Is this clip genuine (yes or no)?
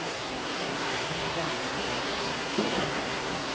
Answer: no